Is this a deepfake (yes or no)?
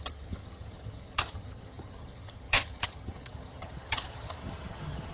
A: yes